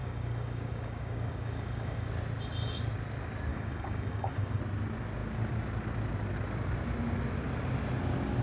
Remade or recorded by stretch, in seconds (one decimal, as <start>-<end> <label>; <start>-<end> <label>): 0.0-2.1 remade; 2.1-3.5 recorded; 3.5-4.6 remade; 4.6-8.4 recorded